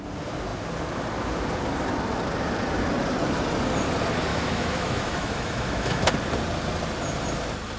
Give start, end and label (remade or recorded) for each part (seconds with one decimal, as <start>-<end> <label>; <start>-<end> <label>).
0.0-4.3 recorded; 4.3-6.1 remade; 6.1-7.8 recorded